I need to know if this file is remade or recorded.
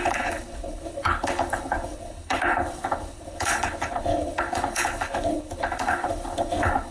remade